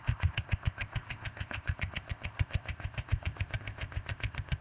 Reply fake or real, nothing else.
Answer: fake